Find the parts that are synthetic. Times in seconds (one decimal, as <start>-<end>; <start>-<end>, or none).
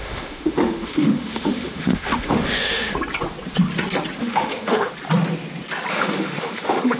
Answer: 0.0-2.9; 4.2-4.9; 5.9-7.0